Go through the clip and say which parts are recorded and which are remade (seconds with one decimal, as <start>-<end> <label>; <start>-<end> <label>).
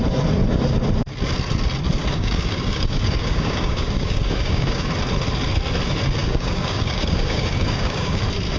0.0-2.0 recorded; 2.0-4.9 remade; 4.9-6.2 recorded; 6.2-8.2 remade; 8.2-8.6 recorded